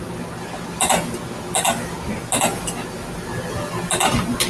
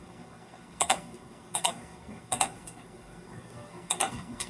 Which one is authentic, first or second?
first